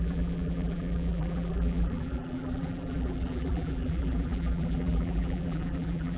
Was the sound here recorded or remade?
remade